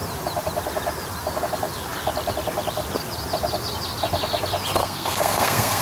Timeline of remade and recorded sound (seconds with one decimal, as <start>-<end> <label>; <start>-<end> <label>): 0.0-4.8 recorded; 4.8-5.8 remade